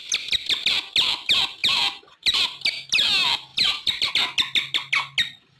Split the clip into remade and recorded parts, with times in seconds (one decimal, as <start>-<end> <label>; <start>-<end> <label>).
0.0-0.7 remade; 0.7-1.6 recorded; 1.6-2.4 remade; 2.4-3.5 recorded; 3.5-4.1 remade; 4.1-5.6 recorded